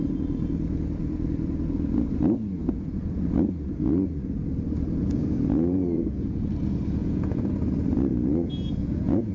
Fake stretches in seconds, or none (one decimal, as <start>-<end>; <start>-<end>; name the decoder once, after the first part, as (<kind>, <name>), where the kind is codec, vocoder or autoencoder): 2.6-3.2 (vocoder, Vocos); 5.0-6.5; 7.0-7.5; 8.1-9.3